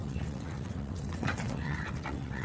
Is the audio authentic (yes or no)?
no